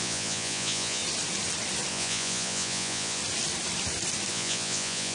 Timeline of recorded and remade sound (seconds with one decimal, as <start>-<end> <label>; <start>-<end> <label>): 0.0-1.0 remade; 1.0-1.9 recorded; 1.9-3.2 remade; 3.2-4.3 recorded; 4.3-5.1 remade